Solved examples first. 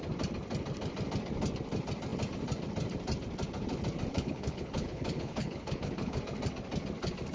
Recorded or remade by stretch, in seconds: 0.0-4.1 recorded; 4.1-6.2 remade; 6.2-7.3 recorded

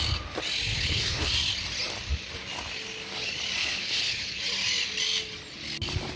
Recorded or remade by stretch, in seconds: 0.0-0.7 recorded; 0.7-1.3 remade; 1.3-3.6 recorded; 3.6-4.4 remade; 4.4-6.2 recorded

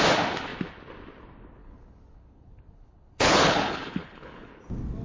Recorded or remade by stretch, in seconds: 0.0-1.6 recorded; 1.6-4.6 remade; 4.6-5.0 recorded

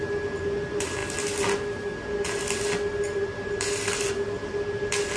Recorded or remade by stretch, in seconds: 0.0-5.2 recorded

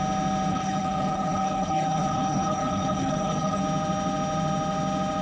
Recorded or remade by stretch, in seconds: 0.0-0.5 recorded; 0.5-3.6 remade; 3.6-5.2 recorded